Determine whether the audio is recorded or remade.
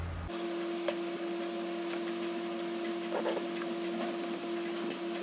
recorded